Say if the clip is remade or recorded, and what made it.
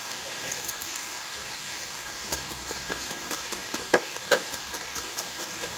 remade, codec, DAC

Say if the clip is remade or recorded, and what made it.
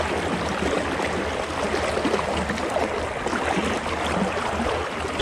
recorded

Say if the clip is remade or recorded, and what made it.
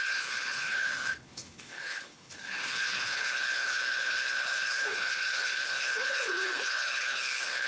remade, codec, HILCodec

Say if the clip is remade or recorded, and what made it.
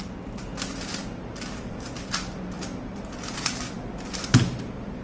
recorded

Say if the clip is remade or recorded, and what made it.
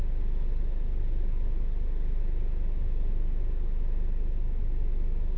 recorded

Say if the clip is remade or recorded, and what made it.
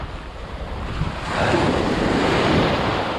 remade, vocoder, BigVGAN v2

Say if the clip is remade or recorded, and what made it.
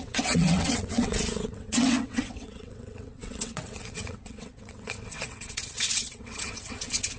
remade, vocoder, WaveNeXt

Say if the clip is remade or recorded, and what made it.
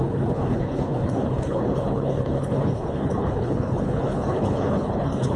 remade, codec, HILCodec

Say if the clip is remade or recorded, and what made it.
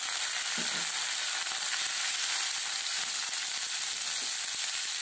recorded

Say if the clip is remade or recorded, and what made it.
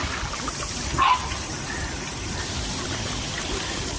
recorded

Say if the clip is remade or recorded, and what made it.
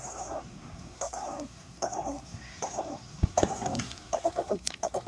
remade, codec, SNAC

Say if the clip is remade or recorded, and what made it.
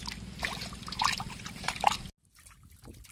recorded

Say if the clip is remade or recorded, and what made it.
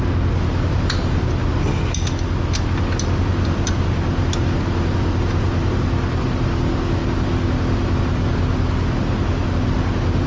recorded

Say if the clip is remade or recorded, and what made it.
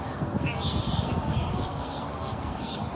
remade, codec, SNAC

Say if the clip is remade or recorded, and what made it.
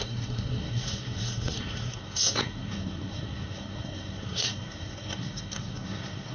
remade, codec, SNAC